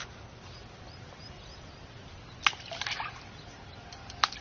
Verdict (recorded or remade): recorded